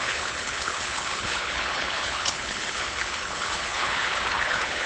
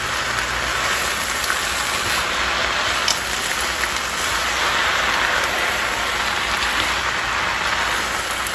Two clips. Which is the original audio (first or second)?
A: second